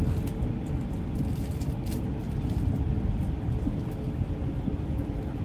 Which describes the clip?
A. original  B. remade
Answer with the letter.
A